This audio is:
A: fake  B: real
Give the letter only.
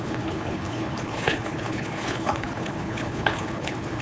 A